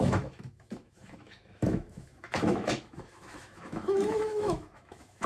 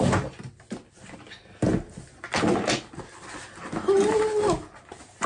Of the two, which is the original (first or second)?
second